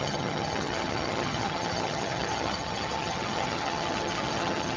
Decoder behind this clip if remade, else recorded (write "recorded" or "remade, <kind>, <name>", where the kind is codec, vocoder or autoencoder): remade, vocoder, HiFi-GAN